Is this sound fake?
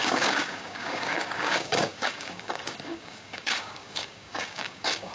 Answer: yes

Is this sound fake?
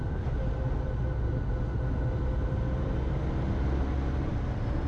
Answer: no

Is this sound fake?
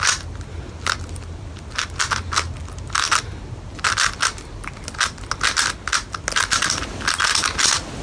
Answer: no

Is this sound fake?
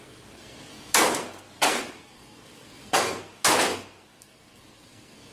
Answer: yes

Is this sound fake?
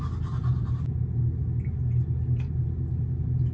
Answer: no